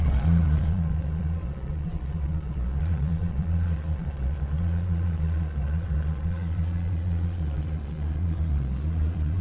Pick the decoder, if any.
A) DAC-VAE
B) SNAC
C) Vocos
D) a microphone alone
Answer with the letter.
C